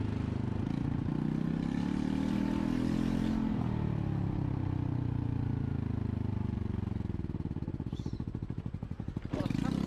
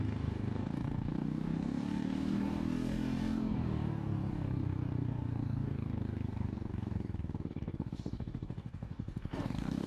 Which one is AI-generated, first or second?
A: second